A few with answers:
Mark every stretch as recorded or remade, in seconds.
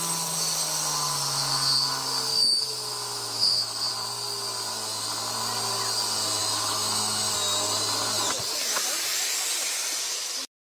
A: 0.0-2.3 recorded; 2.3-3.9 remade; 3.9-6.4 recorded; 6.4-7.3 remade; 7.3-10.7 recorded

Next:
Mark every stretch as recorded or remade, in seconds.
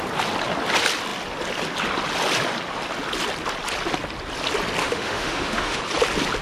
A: 0.0-4.8 recorded; 4.8-5.8 remade; 5.8-6.4 recorded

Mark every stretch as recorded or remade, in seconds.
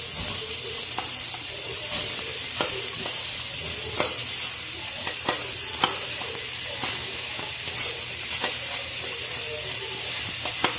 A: 0.0-7.0 recorded; 7.0-7.5 remade; 7.5-10.8 recorded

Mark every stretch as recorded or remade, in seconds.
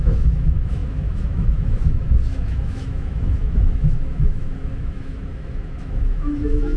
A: 0.0-6.8 remade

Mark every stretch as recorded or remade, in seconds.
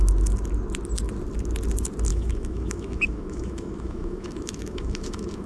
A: 0.0-2.1 recorded; 2.1-5.5 remade